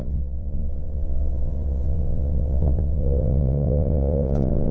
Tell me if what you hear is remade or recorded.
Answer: remade